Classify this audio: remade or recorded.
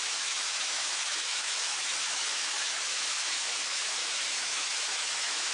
remade